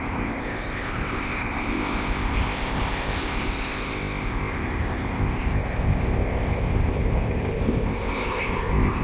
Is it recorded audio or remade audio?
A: remade